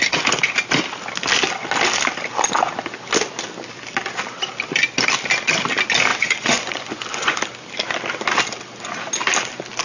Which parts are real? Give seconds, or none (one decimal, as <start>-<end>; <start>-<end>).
0.0-6.1; 7.4-9.8